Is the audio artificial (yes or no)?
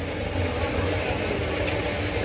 no